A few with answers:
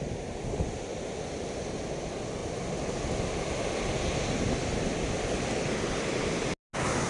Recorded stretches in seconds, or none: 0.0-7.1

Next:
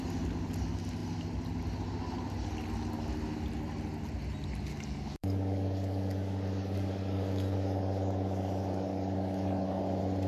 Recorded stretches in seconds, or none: 0.0-4.7; 9.8-10.3